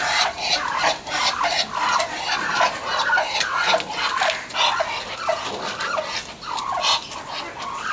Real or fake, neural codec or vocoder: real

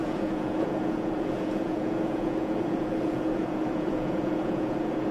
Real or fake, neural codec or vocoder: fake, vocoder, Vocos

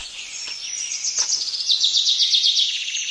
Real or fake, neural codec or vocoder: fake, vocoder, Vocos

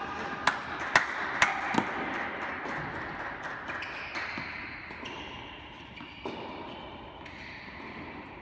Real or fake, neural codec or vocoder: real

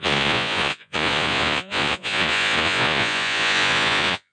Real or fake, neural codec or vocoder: fake, vocoder, Vocos